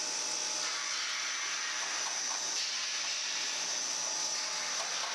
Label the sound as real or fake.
real